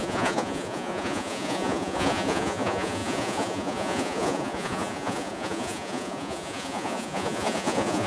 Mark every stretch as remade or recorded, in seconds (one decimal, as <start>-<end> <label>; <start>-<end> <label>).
0.0-8.1 remade